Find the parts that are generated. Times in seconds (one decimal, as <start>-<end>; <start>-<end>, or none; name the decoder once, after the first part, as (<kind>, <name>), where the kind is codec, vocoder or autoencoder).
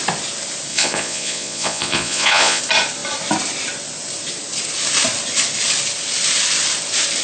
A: 0.7-2.6 (vocoder, Vocos)